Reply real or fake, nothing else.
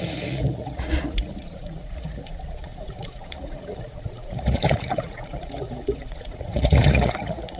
fake